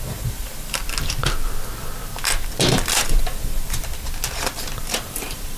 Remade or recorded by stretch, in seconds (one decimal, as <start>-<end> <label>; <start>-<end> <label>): 0.0-0.8 remade; 0.8-3.0 recorded; 3.0-3.8 remade; 3.8-4.8 recorded; 4.8-5.6 remade

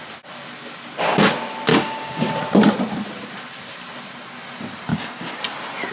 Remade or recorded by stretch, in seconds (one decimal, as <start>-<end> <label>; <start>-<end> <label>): 0.0-1.7 recorded; 1.7-2.3 remade; 2.3-4.9 recorded; 4.9-5.4 remade; 5.4-5.9 recorded

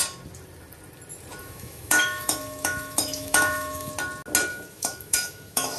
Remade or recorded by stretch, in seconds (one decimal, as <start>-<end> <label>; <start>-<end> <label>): 0.0-1.4 recorded; 1.4-3.9 remade; 3.9-4.5 recorded; 4.5-5.8 remade

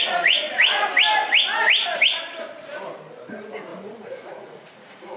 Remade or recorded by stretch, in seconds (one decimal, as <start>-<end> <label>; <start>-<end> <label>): 0.0-0.9 remade; 0.9-3.3 recorded; 3.3-5.2 remade

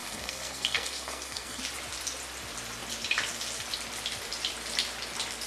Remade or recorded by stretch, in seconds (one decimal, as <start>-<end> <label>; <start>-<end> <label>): 0.0-1.6 remade; 1.6-5.5 recorded

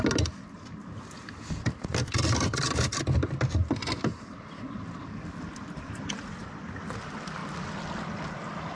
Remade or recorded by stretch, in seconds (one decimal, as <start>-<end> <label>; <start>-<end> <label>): 0.0-1.9 recorded; 1.9-3.2 remade; 3.2-3.6 recorded; 3.6-5.9 remade; 5.9-8.7 recorded